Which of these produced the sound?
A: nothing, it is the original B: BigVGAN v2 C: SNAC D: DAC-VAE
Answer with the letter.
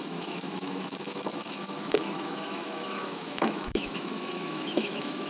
D